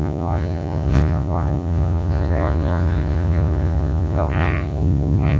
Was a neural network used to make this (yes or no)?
yes